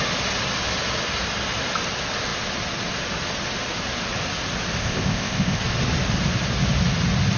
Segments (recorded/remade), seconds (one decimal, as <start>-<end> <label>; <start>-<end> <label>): 0.0-4.8 recorded; 4.8-5.6 remade; 5.6-7.4 recorded